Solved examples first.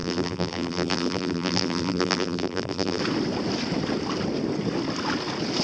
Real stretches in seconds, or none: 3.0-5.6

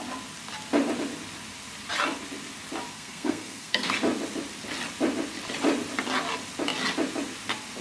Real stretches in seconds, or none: 0.0-2.9; 3.9-7.8

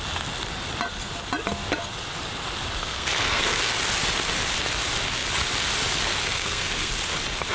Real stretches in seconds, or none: 0.0-2.8; 3.7-6.2; 6.9-7.5

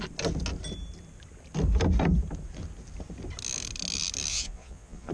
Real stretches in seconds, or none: 0.0-4.3

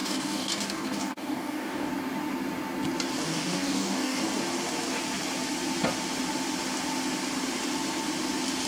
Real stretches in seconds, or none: 1.9-3.3; 4.2-8.7

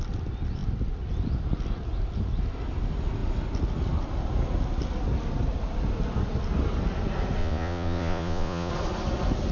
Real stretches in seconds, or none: 0.0-7.4; 8.7-9.5